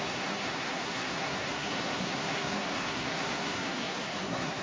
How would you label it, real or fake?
fake